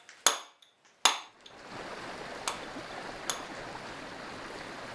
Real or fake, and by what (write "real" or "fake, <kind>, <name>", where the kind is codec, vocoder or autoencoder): real